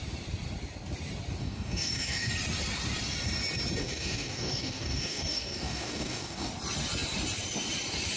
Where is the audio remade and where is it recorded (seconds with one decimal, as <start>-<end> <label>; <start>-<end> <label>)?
0.0-1.4 recorded; 1.4-2.3 remade; 2.3-3.8 recorded; 3.8-6.5 remade; 6.5-8.2 recorded